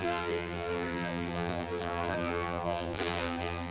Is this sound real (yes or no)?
no